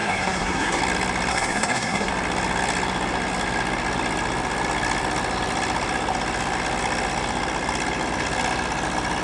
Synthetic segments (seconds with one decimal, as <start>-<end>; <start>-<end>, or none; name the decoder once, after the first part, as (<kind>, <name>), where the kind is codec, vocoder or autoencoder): 0.0-0.8 (codec, SNAC); 1.3-2.1